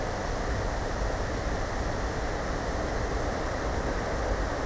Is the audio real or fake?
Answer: real